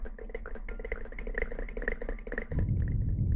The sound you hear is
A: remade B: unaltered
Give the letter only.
B